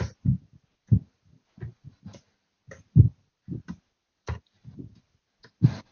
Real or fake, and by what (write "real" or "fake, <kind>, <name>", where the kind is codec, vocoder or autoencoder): real